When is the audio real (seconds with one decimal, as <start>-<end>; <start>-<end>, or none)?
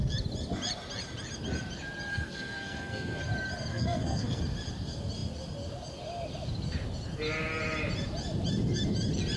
0.0-2.1; 3.2-3.7; 4.4-9.4